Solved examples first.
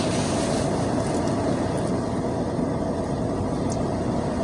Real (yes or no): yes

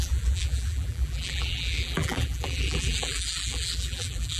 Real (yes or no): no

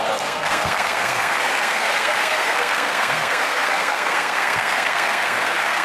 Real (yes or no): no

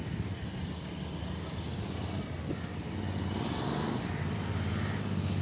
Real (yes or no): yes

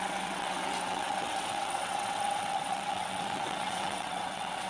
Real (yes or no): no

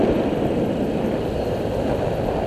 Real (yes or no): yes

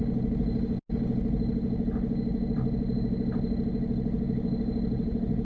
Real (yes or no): yes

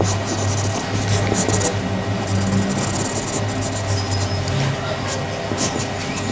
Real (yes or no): yes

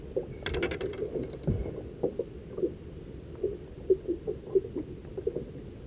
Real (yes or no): yes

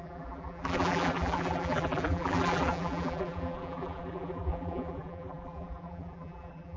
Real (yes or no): no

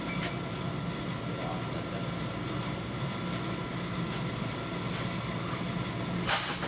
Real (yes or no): yes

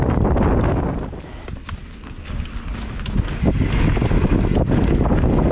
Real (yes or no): yes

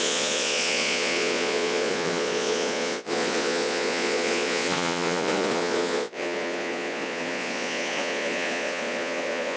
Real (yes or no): no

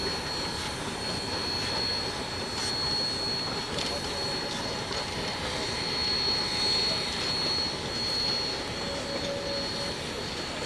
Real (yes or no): yes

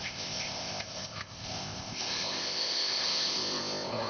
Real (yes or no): no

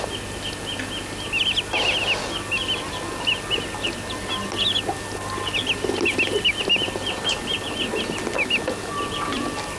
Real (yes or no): yes